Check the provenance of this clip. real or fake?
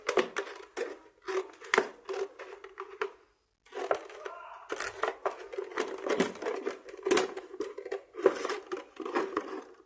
real